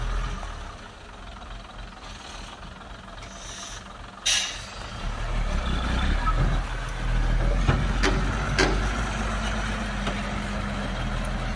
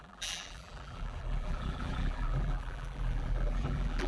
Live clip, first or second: first